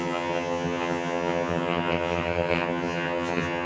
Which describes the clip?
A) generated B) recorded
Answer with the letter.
A